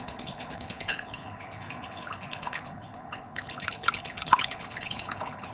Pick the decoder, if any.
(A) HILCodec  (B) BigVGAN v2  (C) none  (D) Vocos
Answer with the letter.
A